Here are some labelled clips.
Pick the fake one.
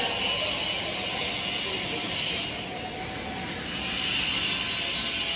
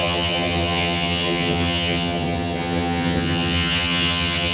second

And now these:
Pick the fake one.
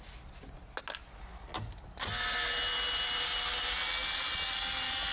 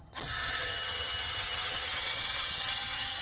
second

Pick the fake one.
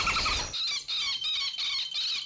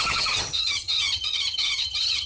second